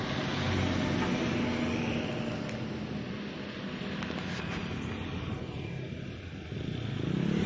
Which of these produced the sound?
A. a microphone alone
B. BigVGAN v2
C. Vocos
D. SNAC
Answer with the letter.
A